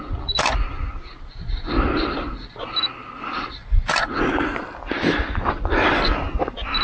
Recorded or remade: recorded